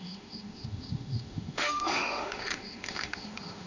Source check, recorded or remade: remade